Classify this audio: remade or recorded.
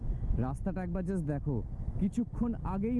recorded